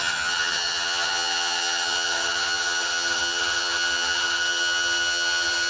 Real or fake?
fake